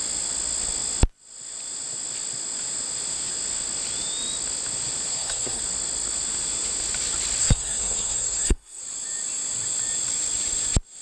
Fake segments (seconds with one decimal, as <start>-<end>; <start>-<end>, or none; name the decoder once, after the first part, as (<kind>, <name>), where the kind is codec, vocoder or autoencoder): 5.1-5.6 (codec, SNAC); 7.4-8.8